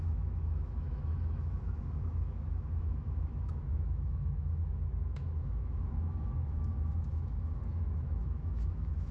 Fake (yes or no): yes